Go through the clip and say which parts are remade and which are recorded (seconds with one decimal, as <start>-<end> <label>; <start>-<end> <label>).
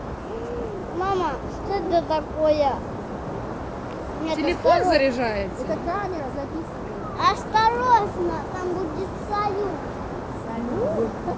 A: 0.0-11.4 recorded